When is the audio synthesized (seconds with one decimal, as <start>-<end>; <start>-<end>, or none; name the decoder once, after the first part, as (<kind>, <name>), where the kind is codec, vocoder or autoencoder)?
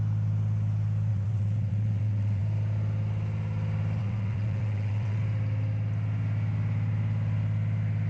1.1-2.4 (vocoder, WaveNeXt); 4.0-5.2